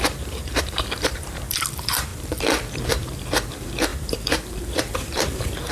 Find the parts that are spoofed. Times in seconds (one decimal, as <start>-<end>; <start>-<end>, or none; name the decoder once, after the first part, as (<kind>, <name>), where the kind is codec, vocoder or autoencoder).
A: 0.0-2.1 (vocoder, BigVGAN v2); 2.8-5.7